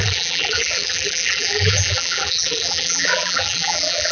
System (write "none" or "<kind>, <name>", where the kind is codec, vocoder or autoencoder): vocoder, BigVGAN v2